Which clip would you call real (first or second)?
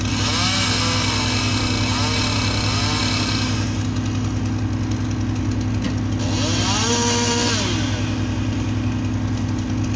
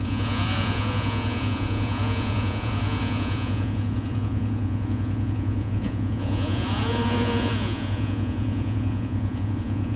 first